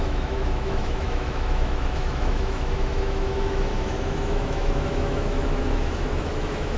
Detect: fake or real fake